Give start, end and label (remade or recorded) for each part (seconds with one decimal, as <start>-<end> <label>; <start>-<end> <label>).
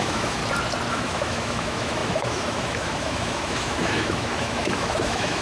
0.0-0.4 remade; 0.4-0.9 recorded; 0.9-5.4 remade